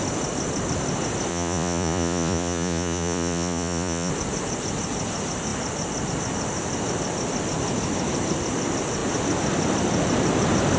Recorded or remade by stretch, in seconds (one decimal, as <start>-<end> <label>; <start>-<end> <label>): 0.0-1.3 recorded; 1.3-4.1 remade; 4.1-10.8 recorded